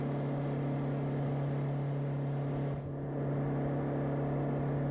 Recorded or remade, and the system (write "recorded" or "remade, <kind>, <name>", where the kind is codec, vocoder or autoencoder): recorded